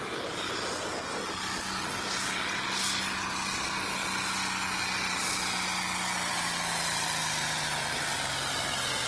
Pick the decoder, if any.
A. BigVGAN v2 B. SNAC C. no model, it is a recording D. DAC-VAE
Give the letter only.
C